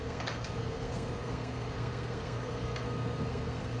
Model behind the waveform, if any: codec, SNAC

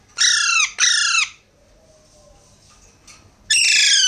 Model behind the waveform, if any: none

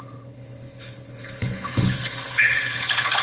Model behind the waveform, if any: codec, HILCodec